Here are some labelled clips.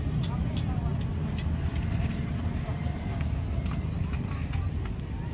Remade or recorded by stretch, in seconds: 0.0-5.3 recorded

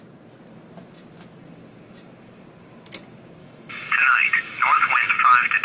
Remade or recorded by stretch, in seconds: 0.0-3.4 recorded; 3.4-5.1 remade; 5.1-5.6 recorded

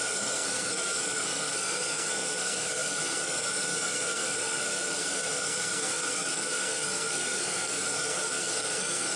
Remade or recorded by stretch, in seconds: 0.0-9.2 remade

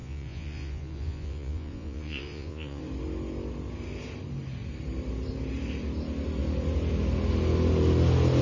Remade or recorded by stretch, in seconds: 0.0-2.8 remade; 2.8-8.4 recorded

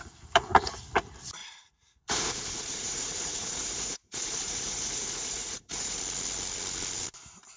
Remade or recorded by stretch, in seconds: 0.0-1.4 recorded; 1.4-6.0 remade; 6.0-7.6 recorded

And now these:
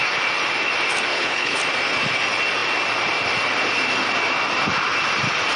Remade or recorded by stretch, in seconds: 0.0-1.1 recorded; 1.1-1.6 remade; 1.6-5.6 recorded

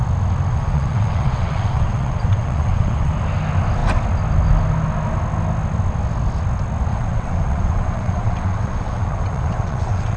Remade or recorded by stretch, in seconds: 0.0-0.5 recorded; 0.5-3.1 remade; 3.1-6.9 recorded; 6.9-10.2 remade